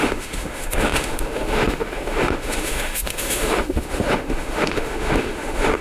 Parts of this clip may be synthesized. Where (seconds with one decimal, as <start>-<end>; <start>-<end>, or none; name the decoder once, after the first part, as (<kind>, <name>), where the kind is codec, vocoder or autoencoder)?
0.0-5.8 (autoencoder, DAC-VAE)